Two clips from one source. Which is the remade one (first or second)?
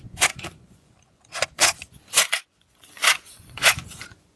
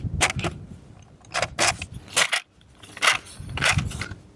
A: first